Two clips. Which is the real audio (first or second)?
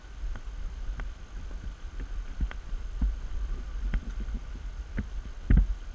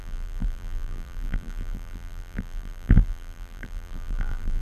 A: first